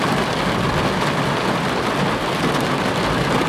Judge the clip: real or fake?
real